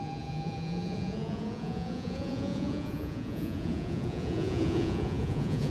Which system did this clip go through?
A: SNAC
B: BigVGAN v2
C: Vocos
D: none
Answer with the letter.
C